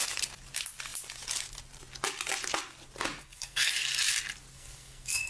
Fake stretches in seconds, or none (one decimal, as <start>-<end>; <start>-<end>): 3.2-3.7; 4.5-5.3